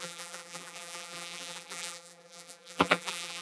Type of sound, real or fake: fake